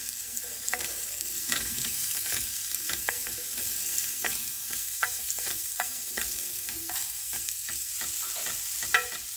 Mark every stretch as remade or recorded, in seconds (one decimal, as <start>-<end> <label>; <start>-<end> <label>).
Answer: 0.0-7.9 remade; 7.9-9.4 recorded